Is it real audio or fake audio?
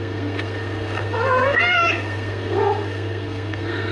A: fake